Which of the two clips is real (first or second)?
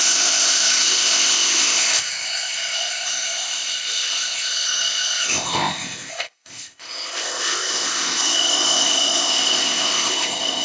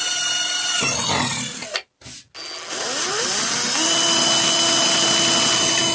second